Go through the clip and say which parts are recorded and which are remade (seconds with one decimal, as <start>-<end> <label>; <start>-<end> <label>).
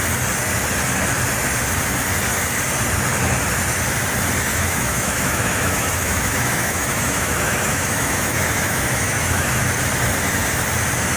0.0-4.5 recorded; 4.5-9.6 remade; 9.6-11.2 recorded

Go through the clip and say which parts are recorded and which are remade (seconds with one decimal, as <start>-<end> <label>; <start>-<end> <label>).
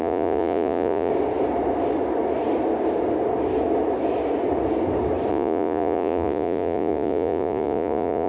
0.0-1.1 remade; 1.1-5.3 recorded; 5.3-8.3 remade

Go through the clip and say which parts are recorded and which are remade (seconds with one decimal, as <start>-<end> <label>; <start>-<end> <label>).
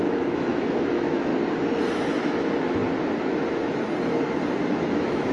0.0-1.3 remade; 1.3-2.2 recorded; 2.2-2.8 remade; 2.8-4.7 recorded; 4.7-5.3 remade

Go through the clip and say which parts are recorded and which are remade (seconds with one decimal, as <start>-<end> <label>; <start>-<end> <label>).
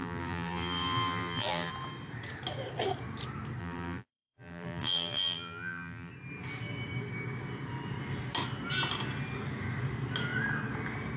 0.0-1.7 remade; 1.7-3.6 recorded; 3.6-6.1 remade; 6.1-11.2 recorded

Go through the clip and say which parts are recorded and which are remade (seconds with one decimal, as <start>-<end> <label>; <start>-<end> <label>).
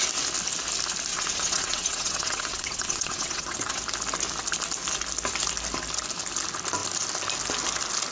0.0-1.1 recorded; 1.1-3.8 remade; 3.8-8.1 recorded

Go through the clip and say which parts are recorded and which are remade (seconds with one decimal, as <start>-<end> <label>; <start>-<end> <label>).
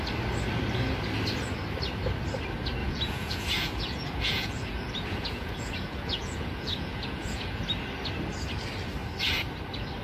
0.0-2.8 recorded; 2.8-7.6 remade; 7.6-10.0 recorded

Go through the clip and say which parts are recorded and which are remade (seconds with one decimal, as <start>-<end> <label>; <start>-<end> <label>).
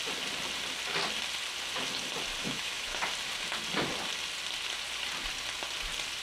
0.0-2.4 recorded; 2.4-3.0 remade; 3.0-6.2 recorded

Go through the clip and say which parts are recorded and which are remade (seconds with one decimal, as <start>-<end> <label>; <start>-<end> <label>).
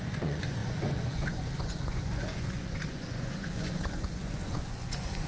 0.0-5.3 remade